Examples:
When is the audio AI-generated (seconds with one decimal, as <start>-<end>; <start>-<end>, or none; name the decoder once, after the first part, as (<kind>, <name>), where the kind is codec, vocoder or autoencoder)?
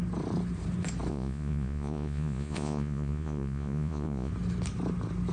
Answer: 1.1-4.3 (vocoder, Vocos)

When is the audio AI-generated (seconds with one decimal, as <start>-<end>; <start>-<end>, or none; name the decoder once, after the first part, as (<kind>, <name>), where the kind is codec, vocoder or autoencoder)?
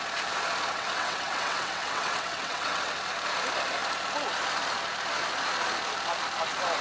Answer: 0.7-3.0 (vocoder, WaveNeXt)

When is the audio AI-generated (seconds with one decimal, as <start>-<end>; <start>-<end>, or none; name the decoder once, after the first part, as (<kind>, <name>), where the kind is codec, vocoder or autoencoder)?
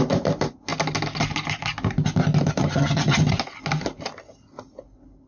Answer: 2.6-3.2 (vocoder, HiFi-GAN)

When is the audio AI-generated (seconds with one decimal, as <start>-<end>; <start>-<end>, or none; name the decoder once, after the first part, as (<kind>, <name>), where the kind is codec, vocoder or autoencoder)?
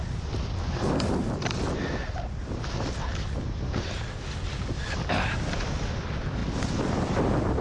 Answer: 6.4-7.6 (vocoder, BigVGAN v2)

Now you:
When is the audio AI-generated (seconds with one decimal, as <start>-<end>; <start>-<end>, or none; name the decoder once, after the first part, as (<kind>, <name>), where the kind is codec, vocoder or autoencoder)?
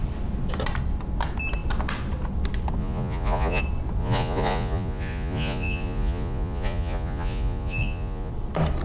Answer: 2.8-3.6 (vocoder, Vocos); 4.0-8.3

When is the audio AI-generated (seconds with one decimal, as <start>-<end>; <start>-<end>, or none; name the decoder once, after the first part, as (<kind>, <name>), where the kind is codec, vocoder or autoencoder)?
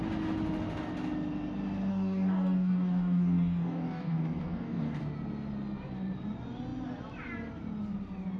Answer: 1.9-5.0 (codec, DAC)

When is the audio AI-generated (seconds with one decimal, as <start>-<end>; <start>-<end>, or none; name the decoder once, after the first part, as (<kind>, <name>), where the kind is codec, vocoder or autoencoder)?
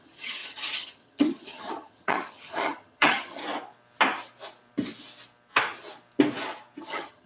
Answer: 0.0-3.4 (vocoder, HiFi-GAN); 6.8-7.3